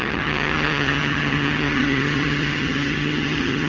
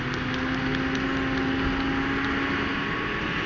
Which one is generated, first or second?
first